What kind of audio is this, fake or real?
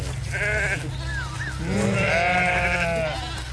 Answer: real